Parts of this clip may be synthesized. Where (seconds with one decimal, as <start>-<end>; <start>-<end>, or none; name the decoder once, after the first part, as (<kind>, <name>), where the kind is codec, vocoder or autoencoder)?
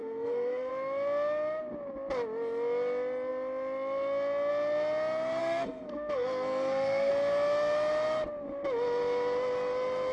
0.0-0.7 (codec, SNAC); 5.4-7.1